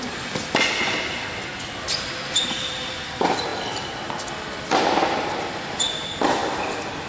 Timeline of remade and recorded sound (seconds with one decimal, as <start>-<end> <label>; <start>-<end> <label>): 0.0-7.1 recorded